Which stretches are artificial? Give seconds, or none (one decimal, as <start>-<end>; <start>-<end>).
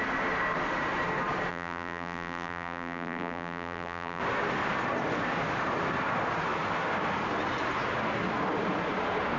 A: 1.5-4.2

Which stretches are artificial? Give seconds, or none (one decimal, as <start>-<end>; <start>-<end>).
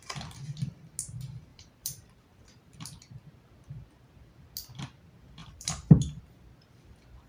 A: 1.5-3.0; 5.4-6.2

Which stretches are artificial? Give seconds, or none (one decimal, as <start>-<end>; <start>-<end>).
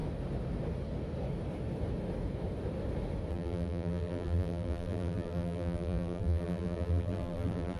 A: 3.3-7.8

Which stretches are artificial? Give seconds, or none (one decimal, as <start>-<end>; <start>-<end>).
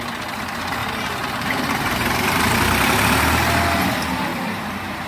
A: 0.8-3.0; 4.3-5.1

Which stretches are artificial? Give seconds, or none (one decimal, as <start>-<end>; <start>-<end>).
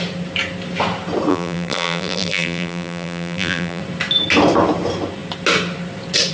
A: 1.3-3.8